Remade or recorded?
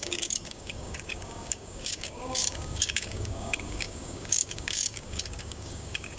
remade